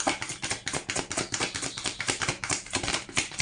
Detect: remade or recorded remade